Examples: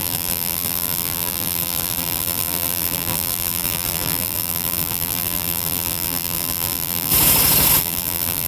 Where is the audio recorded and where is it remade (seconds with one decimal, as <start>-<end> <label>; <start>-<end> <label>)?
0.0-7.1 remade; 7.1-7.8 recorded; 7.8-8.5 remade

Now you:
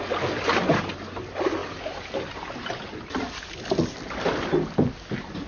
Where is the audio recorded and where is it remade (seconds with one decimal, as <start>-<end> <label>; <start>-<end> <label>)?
0.0-5.5 recorded

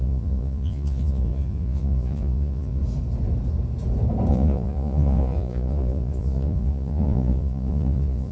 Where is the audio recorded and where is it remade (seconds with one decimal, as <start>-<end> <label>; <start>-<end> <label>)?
0.0-2.8 remade; 2.8-4.3 recorded; 4.3-8.3 remade

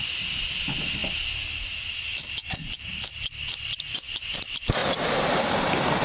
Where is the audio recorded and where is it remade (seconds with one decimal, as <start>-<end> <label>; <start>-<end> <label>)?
0.0-4.8 recorded; 4.8-6.0 remade

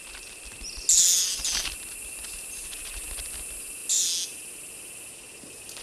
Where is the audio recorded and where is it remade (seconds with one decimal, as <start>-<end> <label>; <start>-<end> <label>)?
0.0-5.8 recorded

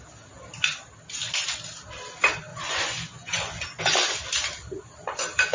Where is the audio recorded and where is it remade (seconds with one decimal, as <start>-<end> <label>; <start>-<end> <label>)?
0.0-2.5 recorded; 2.5-3.8 remade; 3.8-5.5 recorded